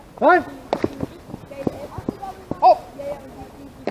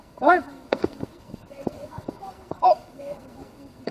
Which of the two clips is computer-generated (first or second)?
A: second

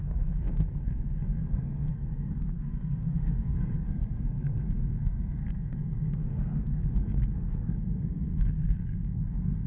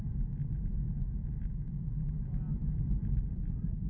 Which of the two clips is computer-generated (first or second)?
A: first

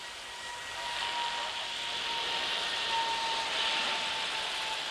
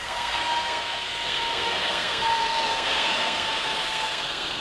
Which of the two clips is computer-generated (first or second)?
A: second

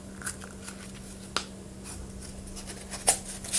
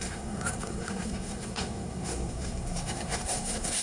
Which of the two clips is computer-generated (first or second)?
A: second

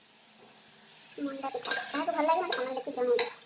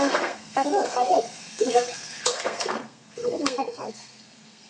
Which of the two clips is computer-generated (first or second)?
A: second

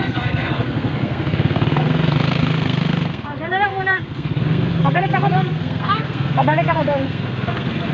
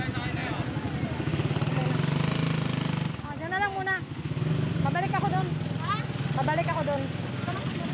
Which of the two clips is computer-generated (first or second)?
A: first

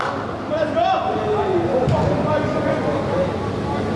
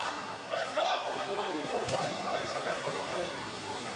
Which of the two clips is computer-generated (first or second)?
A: second